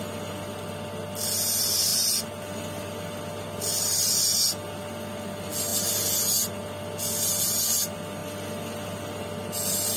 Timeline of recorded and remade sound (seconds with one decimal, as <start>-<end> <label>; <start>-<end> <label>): 0.0-10.0 recorded